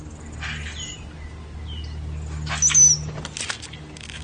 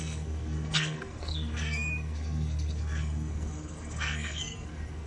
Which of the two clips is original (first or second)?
first